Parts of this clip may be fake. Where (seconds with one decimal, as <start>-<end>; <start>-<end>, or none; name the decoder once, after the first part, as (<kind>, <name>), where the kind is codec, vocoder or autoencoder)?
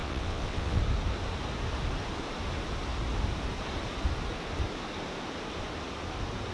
0.0-0.8 (vocoder, WaveNeXt)